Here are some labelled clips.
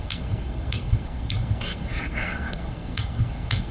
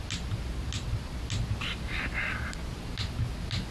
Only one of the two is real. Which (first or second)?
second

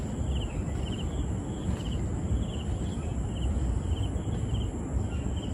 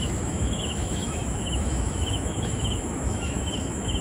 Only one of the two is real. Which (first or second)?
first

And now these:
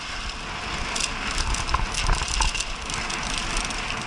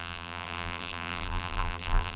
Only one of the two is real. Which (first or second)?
first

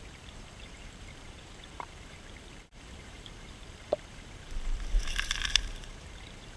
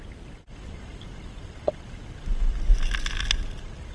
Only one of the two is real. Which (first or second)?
second